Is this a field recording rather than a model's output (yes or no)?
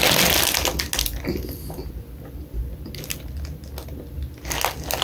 yes